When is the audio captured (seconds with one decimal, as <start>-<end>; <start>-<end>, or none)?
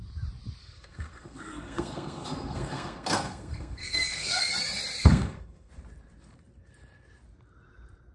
0.0-0.6; 4.5-5.0; 5.7-8.1